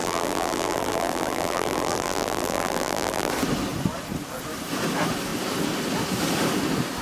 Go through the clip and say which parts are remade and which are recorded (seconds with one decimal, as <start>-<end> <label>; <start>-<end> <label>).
0.0-3.3 remade; 3.3-7.0 recorded